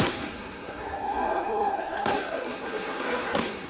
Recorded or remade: remade